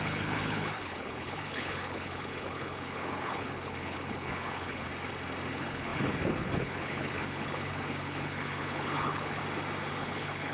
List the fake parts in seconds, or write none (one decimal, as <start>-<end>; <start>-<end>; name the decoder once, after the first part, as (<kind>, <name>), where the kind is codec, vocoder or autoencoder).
0.0-4.9 (codec, HILCodec); 5.5-9.4; 9.9-10.5